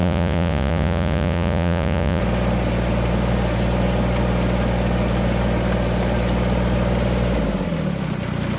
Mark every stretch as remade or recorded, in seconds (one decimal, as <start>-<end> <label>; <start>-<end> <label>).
0.0-2.2 remade; 2.2-8.6 recorded